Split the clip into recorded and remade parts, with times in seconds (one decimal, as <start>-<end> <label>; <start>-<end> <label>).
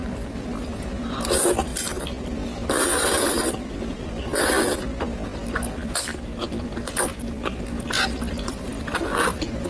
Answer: 0.0-9.7 recorded